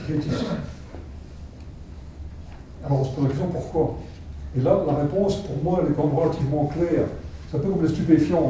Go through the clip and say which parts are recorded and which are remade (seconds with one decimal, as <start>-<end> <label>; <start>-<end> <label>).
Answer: 0.0-0.6 remade; 0.6-5.6 recorded; 5.6-6.4 remade; 6.4-6.9 recorded; 6.9-7.8 remade; 7.8-8.5 recorded